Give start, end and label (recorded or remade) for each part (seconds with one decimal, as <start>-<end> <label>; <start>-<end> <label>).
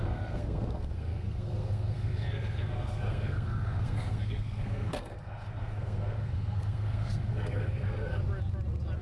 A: 0.0-8.2 remade; 8.2-9.0 recorded